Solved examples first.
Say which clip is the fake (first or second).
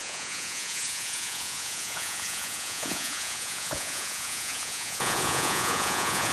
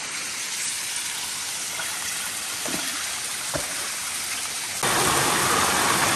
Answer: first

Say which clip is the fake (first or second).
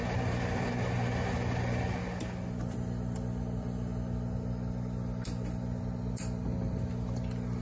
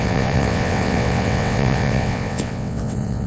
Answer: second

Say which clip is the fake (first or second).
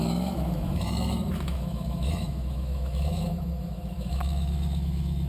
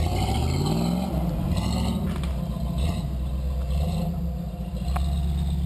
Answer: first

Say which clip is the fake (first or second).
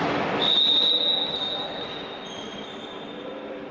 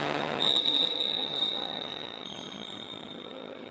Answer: second